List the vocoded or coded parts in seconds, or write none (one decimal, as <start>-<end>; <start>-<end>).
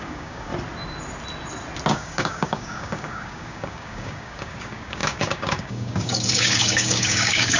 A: 0.0-0.5; 1.9-7.6